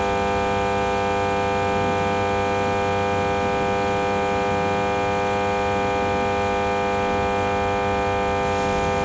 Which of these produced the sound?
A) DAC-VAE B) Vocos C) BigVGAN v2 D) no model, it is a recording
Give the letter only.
D